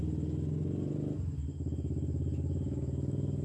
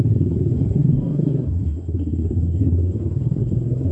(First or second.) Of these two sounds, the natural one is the first